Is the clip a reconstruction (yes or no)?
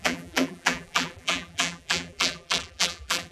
yes